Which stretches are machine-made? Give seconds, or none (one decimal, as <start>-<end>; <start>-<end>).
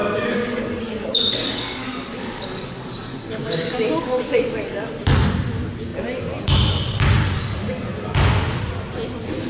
0.0-4.9; 7.2-7.7